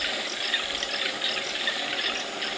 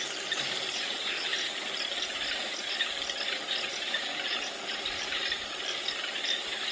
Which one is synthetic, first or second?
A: second